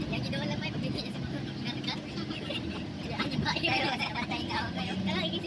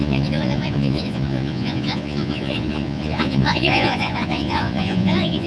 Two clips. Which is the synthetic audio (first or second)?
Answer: second